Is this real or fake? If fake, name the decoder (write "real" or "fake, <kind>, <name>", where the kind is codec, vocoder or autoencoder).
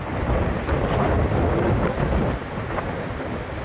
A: real